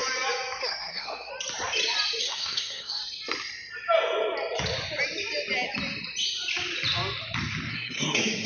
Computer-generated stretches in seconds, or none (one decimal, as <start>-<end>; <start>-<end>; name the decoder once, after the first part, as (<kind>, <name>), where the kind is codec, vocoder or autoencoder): 0.6-1.3 (codec, SNAC); 2.2-3.0; 7.7-8.5